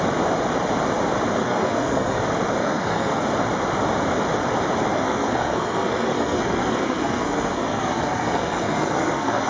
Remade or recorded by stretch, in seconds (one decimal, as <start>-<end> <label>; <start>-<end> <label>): 0.0-1.4 recorded; 1.4-2.2 remade; 2.2-2.6 recorded; 2.6-3.2 remade; 3.2-4.9 recorded; 4.9-9.5 remade